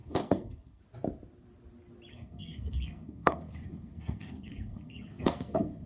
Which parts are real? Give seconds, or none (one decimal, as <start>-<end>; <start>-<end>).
0.8-2.1